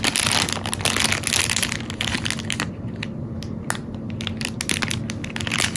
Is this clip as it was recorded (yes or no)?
yes